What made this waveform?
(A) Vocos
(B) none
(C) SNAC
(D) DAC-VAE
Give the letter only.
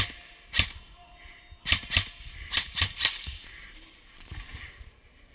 B